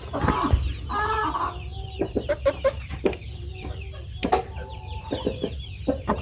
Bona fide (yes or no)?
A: yes